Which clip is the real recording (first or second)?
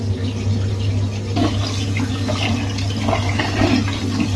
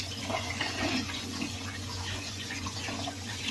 first